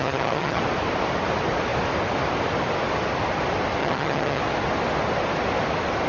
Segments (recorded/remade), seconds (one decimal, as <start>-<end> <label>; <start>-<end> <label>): 0.0-0.6 remade; 0.6-3.8 recorded; 3.8-4.4 remade; 4.4-6.1 recorded